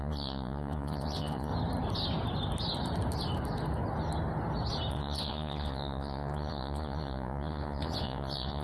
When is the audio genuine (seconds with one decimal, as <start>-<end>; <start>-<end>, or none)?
1.5-4.9